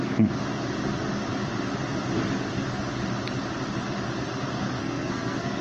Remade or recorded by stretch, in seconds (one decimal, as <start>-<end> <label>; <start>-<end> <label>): 0.0-4.8 recorded; 4.8-5.6 remade